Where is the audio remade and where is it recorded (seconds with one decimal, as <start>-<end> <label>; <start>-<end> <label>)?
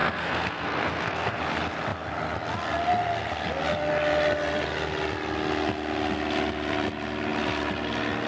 0.0-1.4 remade; 1.4-8.3 recorded